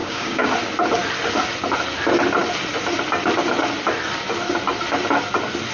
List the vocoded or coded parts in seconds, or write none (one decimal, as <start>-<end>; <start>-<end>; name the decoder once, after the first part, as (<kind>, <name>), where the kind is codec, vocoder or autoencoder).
0.0-0.5 (codec, DAC)